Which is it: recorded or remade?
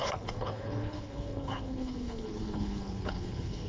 remade